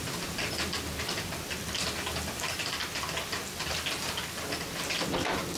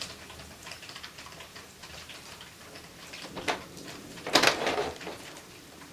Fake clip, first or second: second